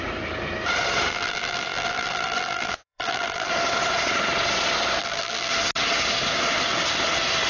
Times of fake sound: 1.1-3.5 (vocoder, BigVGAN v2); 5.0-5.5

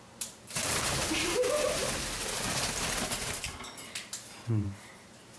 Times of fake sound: 0.0-1.8 (vocoder, BigVGAN v2); 4.0-5.4

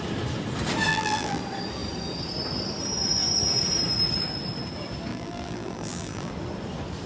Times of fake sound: 0.9-1.4 (vocoder, BigVGAN v2); 5.1-6.3

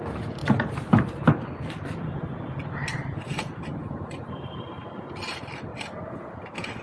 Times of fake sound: 0.4-3.8 (vocoder, BigVGAN v2)

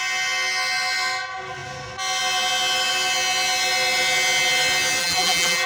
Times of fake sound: 5.0-5.7 (vocoder, BigVGAN v2)

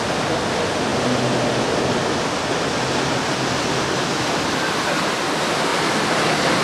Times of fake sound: none

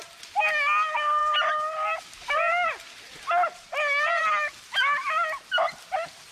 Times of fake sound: none

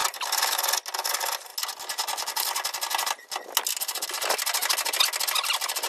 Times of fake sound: none